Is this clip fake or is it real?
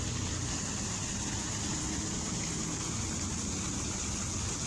real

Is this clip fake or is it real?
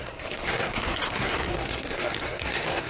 fake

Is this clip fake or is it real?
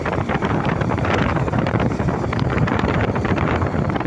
fake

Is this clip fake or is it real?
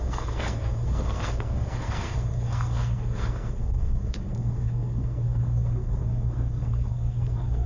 fake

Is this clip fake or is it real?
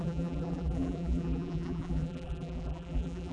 fake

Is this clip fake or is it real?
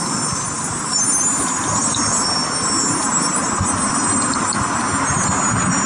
real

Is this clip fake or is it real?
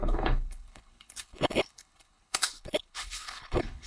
fake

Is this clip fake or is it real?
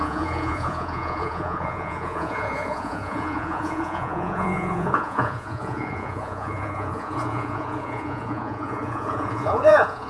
fake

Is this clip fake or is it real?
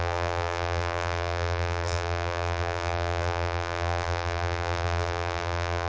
fake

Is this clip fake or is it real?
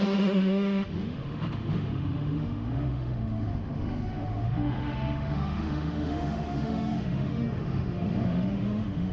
fake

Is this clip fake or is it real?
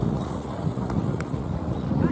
fake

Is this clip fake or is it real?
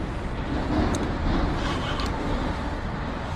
real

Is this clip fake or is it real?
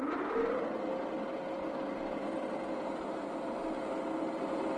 real